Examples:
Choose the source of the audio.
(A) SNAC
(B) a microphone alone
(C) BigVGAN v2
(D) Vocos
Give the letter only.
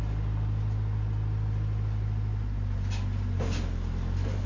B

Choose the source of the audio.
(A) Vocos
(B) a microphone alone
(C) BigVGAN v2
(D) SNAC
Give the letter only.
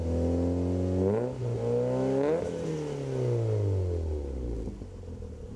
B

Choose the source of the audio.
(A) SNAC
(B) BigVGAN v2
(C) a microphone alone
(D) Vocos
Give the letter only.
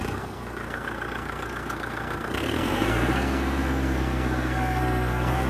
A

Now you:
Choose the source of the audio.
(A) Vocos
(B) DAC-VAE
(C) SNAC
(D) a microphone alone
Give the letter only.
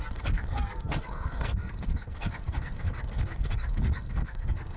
C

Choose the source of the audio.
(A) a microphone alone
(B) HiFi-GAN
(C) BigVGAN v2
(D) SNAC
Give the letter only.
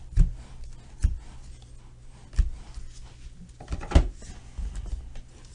A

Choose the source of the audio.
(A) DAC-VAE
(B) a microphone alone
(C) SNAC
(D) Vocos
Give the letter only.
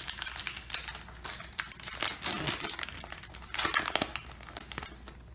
B